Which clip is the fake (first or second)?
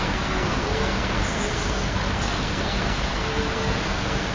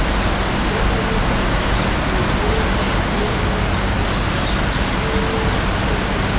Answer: first